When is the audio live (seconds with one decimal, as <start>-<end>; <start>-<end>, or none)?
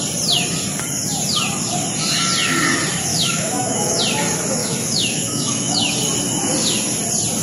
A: 0.0-3.1; 4.0-4.6; 5.9-7.4